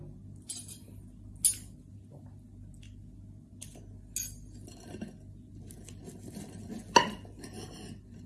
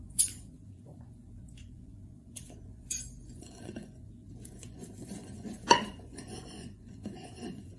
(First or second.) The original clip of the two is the first